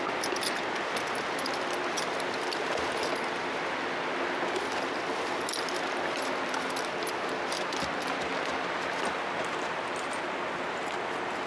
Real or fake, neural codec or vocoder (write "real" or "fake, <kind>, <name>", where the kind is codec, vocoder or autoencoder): real